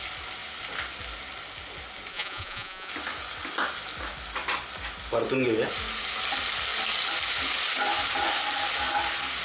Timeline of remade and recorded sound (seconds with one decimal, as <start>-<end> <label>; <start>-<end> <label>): 0.0-2.1 recorded; 2.1-2.9 remade; 2.9-9.4 recorded